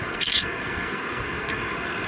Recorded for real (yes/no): no